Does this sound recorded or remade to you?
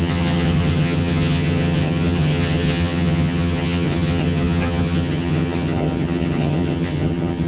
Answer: remade